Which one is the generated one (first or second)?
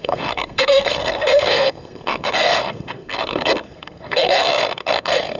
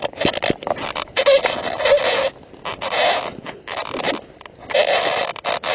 first